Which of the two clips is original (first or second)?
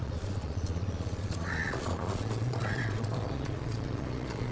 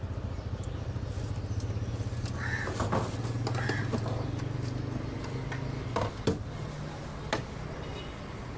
second